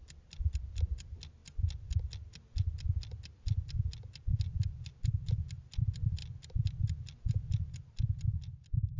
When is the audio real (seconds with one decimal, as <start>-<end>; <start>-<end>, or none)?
0.0-4.3; 5.0-9.0